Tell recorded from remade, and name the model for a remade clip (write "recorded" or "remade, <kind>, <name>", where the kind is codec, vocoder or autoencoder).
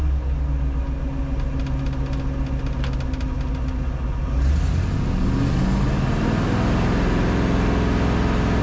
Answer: recorded